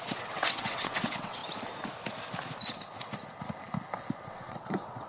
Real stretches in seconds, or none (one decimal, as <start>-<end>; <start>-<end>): 1.4-4.3